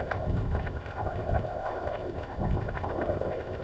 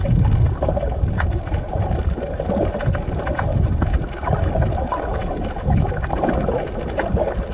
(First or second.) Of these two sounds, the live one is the second